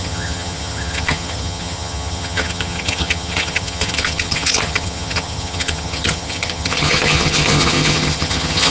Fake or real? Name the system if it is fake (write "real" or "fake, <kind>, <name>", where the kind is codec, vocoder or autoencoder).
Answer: fake, vocoder, HiFi-GAN